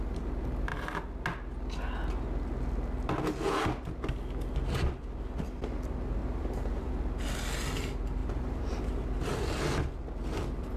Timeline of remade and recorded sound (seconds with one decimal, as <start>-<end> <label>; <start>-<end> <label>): 0.0-6.2 recorded; 6.2-6.9 remade; 6.9-8.2 recorded; 8.2-8.9 remade; 8.9-10.8 recorded